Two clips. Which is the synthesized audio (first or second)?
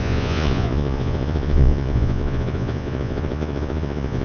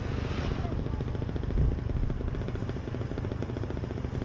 first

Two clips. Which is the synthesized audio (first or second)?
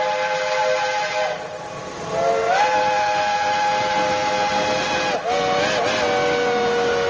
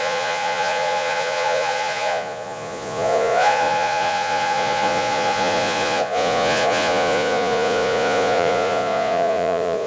second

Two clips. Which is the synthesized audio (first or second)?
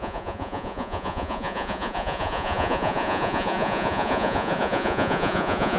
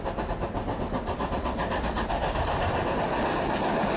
first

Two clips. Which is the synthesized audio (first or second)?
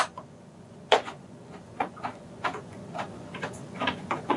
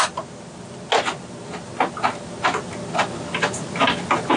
first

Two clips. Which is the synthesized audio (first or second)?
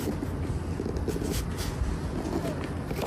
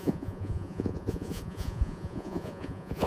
second